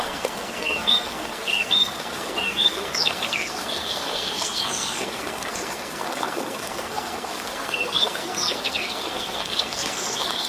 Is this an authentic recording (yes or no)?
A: no